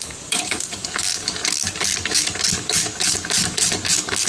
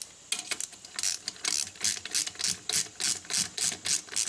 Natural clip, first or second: second